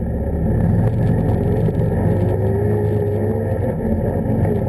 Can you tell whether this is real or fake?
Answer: real